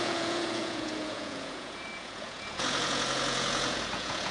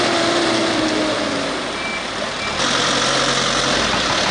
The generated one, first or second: first